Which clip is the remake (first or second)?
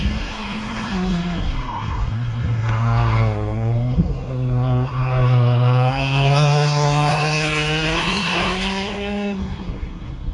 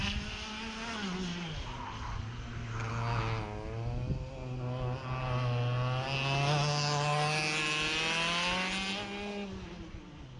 first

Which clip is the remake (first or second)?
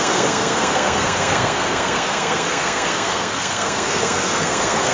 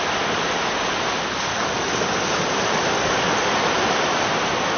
first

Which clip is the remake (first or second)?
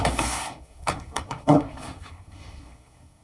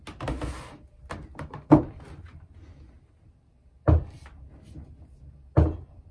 first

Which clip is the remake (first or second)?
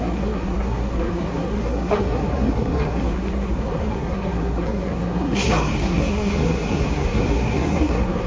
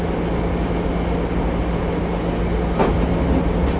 first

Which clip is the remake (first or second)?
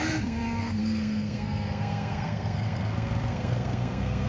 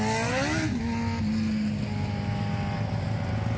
first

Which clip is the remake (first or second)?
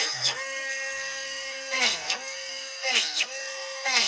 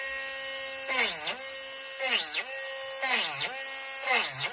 first